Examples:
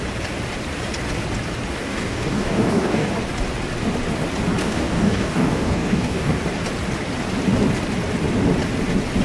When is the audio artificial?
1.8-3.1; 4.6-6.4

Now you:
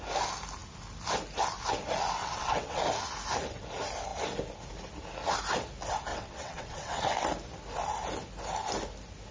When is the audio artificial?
2.2-2.8; 6.1-7.0